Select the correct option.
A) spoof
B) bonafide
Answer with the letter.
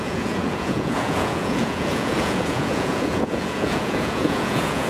A